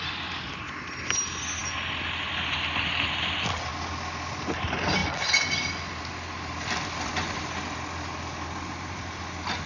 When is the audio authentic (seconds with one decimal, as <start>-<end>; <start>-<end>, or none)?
0.0-9.7